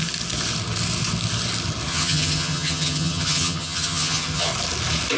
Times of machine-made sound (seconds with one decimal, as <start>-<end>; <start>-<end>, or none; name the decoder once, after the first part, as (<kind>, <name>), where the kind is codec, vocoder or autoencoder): 1.9-4.5 (vocoder, HiFi-GAN)